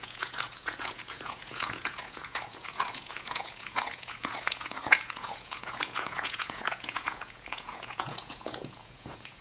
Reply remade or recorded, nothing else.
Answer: remade